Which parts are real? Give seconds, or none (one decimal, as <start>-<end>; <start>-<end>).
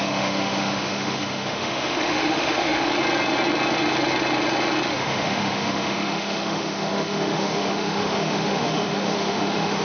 2.9-4.9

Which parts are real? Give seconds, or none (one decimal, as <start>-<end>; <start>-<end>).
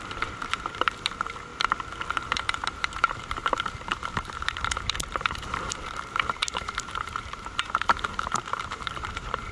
1.5-2.1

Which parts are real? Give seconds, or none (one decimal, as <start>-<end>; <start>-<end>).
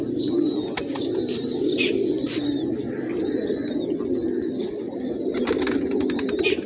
0.0-6.7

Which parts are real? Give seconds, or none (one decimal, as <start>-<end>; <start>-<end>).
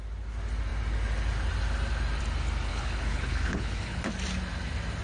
0.0-2.7; 4.0-5.0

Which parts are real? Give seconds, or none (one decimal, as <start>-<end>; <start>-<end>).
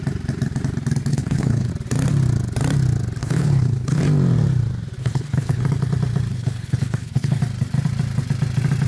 0.0-1.1; 1.7-3.2; 4.0-5.0; 5.6-6.3; 7.4-8.9